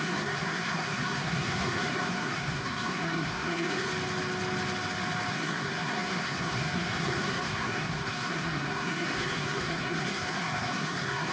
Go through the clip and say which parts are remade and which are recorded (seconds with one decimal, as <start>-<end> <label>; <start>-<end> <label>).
0.0-3.9 remade; 3.9-5.3 recorded; 5.3-11.3 remade